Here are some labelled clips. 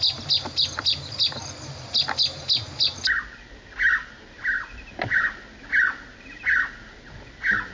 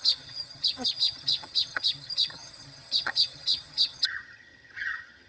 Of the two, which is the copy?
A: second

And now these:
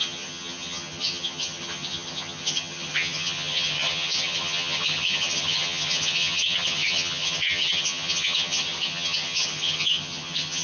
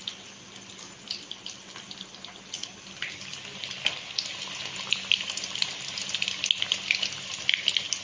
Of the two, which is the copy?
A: first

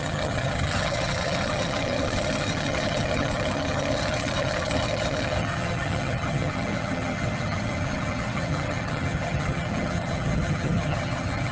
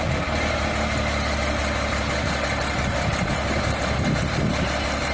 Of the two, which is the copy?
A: first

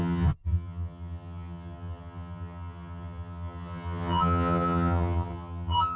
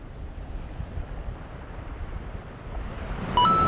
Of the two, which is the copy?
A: first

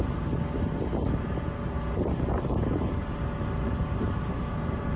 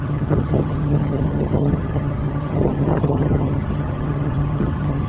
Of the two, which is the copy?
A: second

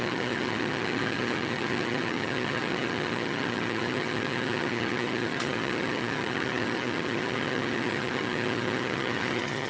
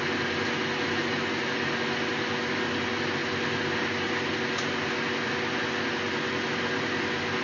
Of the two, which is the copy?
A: first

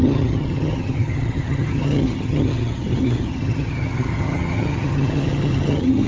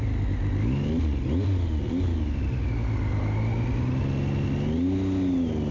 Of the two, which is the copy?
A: first